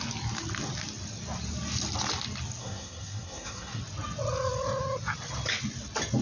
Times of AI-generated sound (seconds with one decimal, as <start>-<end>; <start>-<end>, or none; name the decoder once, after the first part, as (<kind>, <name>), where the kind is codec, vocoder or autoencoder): 2.6-3.8 (codec, SNAC)